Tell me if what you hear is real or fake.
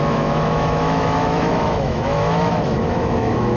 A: fake